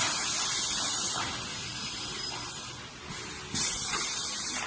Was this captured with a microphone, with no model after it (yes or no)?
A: yes